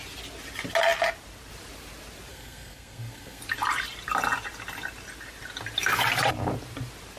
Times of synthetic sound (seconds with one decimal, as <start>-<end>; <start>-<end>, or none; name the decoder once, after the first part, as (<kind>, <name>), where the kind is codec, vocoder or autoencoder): 2.3-3.4 (codec, SNAC)